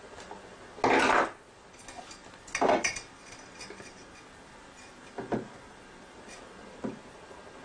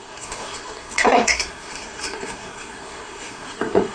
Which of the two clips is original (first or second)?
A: first